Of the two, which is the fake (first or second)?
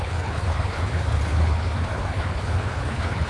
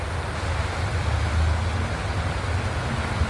first